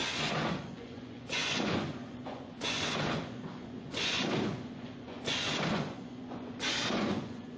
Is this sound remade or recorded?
remade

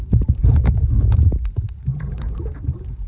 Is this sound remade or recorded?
remade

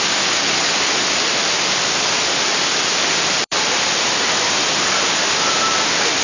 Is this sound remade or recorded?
remade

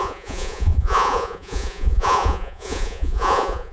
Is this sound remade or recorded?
remade